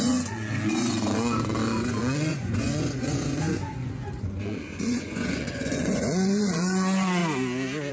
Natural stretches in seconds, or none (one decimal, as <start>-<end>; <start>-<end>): 7.2-7.9